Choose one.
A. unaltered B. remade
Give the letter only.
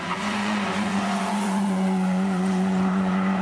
B